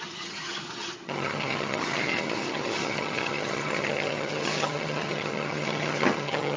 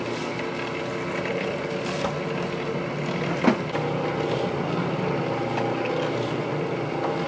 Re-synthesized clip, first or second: first